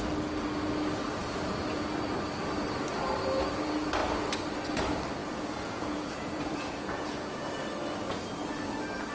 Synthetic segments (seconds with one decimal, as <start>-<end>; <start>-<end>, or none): 5.2-7.5